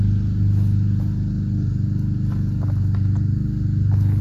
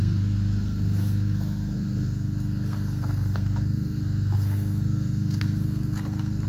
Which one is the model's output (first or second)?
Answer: second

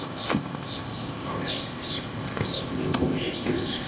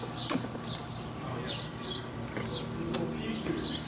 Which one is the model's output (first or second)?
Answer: first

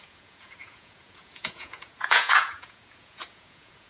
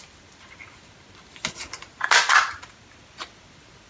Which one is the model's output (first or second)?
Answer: first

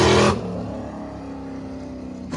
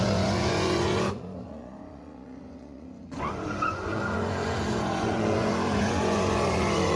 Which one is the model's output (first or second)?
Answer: second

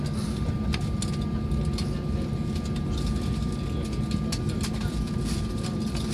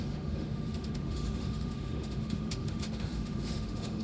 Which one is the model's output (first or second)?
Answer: second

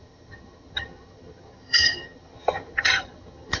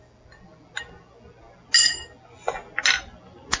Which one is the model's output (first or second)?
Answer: first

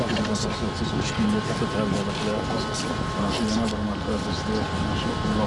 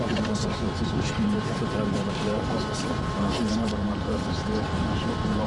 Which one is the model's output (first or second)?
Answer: second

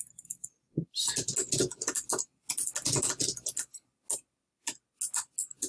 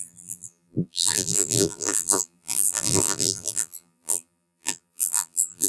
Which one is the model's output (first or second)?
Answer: second